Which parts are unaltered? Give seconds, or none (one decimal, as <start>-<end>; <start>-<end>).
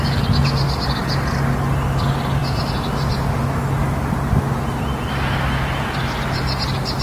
0.0-7.0